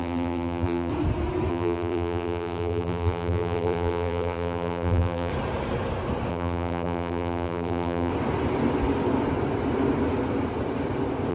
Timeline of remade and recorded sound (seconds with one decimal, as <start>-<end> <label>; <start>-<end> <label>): 0.0-0.9 remade; 0.9-1.5 recorded; 1.5-5.3 remade; 5.3-6.3 recorded; 6.3-8.1 remade; 8.1-11.3 recorded

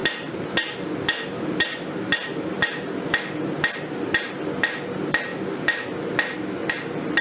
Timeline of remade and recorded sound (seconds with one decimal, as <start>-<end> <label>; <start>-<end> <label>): 0.0-7.2 recorded

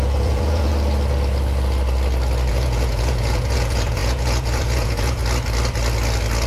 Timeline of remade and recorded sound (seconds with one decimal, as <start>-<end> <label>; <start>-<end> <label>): 0.0-0.7 remade; 0.7-2.5 recorded; 2.5-5.2 remade; 5.2-6.5 recorded

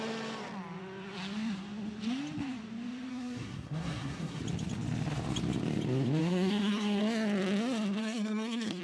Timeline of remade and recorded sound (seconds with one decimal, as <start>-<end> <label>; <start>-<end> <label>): 0.0-3.1 recorded; 3.1-4.4 remade; 4.4-6.2 recorded; 6.2-7.0 remade; 7.0-8.0 recorded; 8.0-8.8 remade

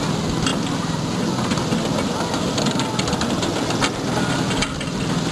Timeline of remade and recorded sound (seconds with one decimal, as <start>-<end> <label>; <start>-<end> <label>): 0.0-5.3 recorded

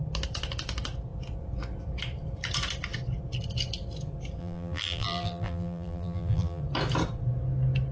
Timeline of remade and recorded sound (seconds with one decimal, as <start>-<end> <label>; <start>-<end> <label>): 0.0-4.4 recorded; 4.4-6.6 remade; 6.6-7.9 recorded

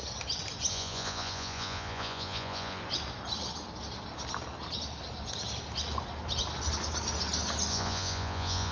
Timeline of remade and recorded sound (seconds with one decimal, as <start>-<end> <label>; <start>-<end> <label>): 0.0-0.7 recorded; 0.7-2.8 remade; 2.8-7.7 recorded; 7.7-8.7 remade

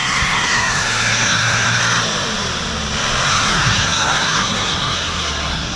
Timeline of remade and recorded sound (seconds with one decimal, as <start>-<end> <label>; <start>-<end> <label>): 0.0-1.8 remade; 1.8-3.3 recorded; 3.3-5.8 remade